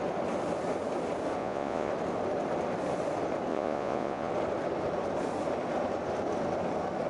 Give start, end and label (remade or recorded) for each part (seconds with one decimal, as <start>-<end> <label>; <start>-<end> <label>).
0.0-1.4 recorded; 1.4-1.9 remade; 1.9-3.5 recorded; 3.5-4.3 remade; 4.3-7.1 recorded